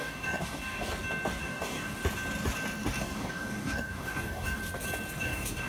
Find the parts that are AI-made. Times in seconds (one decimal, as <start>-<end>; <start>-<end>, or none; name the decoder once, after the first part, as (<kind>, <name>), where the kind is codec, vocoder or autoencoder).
0.0-0.9 (codec, DAC); 1.4-2.0; 3.0-4.6; 5.2-5.7